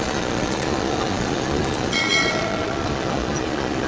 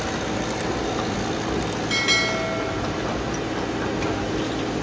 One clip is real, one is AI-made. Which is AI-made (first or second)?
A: first